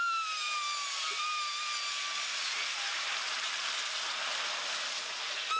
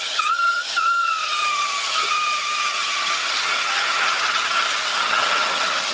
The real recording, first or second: first